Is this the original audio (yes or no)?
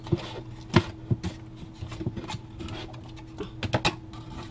yes